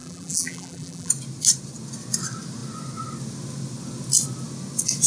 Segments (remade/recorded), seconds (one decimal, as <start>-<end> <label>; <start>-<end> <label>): 0.0-1.1 remade; 1.1-5.1 recorded